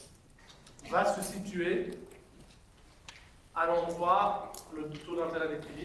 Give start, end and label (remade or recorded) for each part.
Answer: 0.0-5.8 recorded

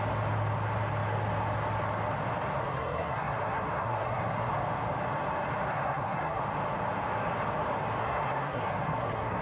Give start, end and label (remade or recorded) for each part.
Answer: 0.0-2.6 recorded; 2.6-4.5 remade; 4.5-5.7 recorded; 5.7-6.4 remade; 6.4-8.0 recorded; 8.0-9.4 remade

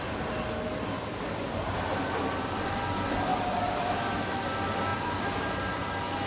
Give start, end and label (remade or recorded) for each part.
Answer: 0.0-3.3 recorded; 3.3-4.0 remade; 4.0-4.9 recorded; 4.9-6.3 remade

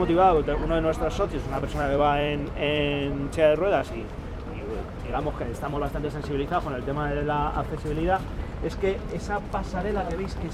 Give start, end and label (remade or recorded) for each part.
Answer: 0.0-0.9 recorded; 0.9-2.8 remade; 2.8-3.8 recorded; 3.8-5.8 remade; 5.8-10.5 recorded

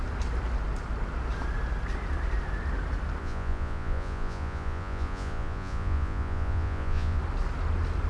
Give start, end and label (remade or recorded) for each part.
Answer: 0.0-3.2 recorded; 3.2-7.2 remade; 7.2-8.1 recorded

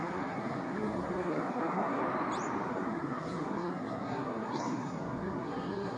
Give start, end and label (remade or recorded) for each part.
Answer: 0.0-2.0 remade; 2.0-2.7 recorded; 2.7-6.0 remade

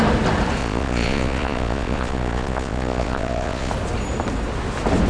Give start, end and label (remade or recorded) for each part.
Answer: 0.0-0.6 recorded; 0.6-3.7 remade; 3.7-5.1 recorded